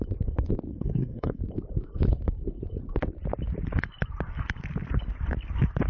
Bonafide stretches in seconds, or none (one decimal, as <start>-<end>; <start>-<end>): 0.0-0.7; 1.4-5.9